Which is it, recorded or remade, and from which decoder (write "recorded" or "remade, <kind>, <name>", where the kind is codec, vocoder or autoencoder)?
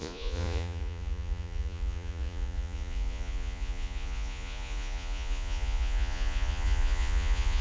remade, vocoder, Vocos